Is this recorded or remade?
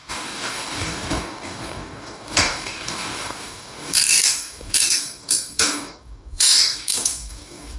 remade